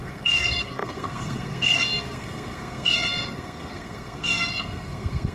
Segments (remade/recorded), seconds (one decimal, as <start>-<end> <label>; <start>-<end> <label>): 0.0-5.3 remade

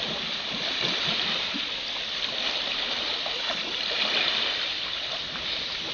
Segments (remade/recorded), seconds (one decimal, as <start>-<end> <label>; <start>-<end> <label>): 0.0-5.9 recorded

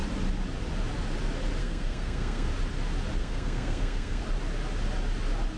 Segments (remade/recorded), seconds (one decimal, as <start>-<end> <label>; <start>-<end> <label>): 0.0-1.6 recorded; 1.6-2.5 remade; 2.5-3.2 recorded; 3.2-4.2 remade; 4.2-5.6 recorded

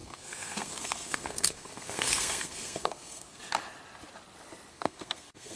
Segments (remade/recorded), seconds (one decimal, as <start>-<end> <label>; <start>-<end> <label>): 0.0-3.4 remade; 3.4-4.7 recorded; 4.7-5.6 remade

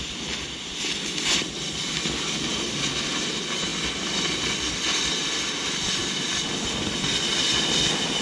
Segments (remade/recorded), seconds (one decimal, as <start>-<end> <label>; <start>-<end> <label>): 0.0-8.2 recorded

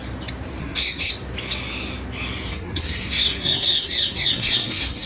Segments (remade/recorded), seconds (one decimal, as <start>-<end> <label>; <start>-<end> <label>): 0.0-0.6 recorded; 0.6-1.1 remade; 1.1-2.5 recorded; 2.5-5.1 remade